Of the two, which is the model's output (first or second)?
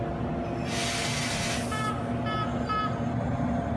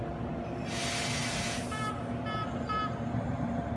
second